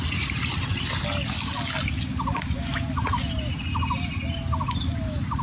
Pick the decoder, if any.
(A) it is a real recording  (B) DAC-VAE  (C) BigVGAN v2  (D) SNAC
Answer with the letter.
A